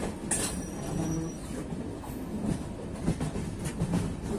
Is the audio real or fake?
real